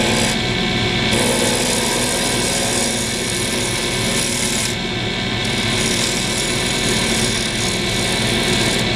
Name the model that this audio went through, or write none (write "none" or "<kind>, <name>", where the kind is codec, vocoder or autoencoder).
none